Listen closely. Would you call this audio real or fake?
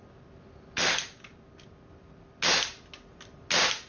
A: real